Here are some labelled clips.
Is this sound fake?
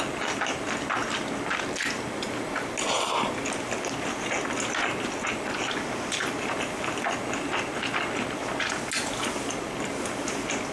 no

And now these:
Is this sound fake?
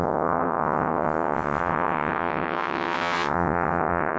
yes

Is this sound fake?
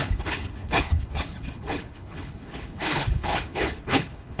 yes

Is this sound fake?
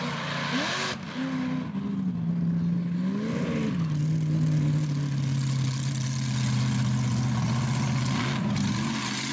no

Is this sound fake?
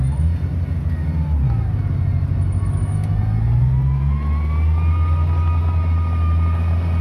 no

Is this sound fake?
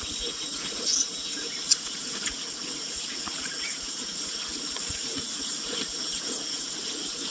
yes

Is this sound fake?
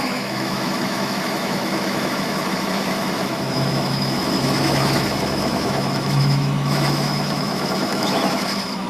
yes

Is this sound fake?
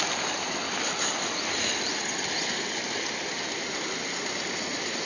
no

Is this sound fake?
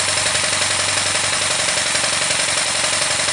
no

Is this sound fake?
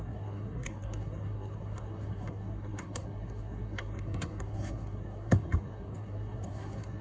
yes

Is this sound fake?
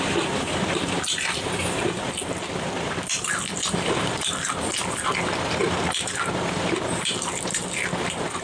yes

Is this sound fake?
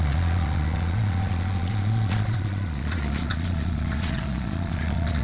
yes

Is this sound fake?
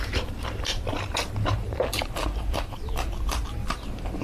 yes